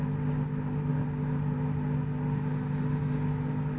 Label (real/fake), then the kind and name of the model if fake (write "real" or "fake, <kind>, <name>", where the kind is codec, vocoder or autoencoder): real